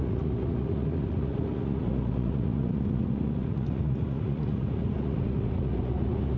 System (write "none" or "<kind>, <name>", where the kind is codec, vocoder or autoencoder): vocoder, Vocos